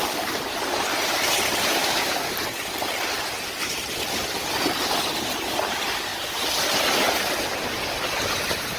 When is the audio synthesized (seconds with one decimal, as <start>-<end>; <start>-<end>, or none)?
1.8-2.3